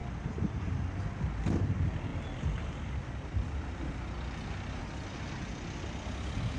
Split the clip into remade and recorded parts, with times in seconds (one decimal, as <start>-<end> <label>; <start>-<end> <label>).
0.0-6.6 recorded

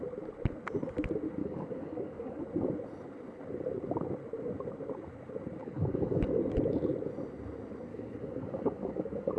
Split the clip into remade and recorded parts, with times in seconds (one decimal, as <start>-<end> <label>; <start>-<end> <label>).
0.0-1.4 recorded; 1.4-2.4 remade; 2.4-5.6 recorded; 5.6-6.4 remade; 6.4-7.9 recorded; 7.9-9.4 remade

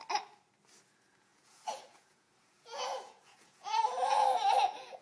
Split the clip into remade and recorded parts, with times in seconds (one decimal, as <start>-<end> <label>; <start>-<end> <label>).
0.0-0.8 recorded; 0.8-5.0 remade

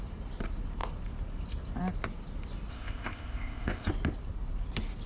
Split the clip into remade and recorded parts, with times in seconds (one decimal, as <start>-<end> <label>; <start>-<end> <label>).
0.0-2.7 recorded; 2.7-3.9 remade; 3.9-5.1 recorded

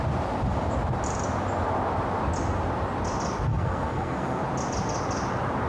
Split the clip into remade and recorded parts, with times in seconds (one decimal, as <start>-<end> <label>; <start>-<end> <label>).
0.0-3.5 recorded; 3.5-4.4 remade; 4.4-5.7 recorded

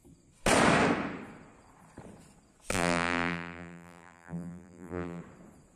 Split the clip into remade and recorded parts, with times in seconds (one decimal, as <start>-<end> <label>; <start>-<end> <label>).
0.0-2.7 recorded; 2.7-5.2 remade; 5.2-5.8 recorded

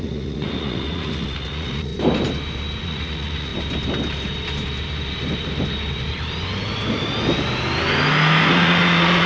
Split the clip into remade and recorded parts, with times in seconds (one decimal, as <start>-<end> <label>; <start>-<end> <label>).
0.0-1.9 remade; 1.9-2.8 recorded; 2.8-3.5 remade; 3.5-8.5 recorded; 8.5-9.3 remade